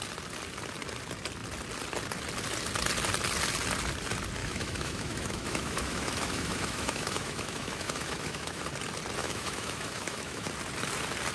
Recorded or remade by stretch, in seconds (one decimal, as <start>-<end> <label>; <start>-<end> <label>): 0.0-4.4 recorded; 4.4-8.6 remade; 8.6-9.2 recorded; 9.2-10.5 remade; 10.5-11.3 recorded